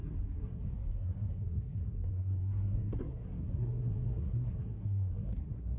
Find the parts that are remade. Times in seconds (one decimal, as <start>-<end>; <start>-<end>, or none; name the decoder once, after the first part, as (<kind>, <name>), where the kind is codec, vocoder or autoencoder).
0.0-5.8 (codec, SNAC)